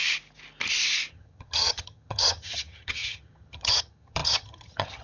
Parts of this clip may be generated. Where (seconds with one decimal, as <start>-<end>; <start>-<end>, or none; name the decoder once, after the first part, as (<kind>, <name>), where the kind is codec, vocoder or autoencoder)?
1.1-5.0 (vocoder, HiFi-GAN)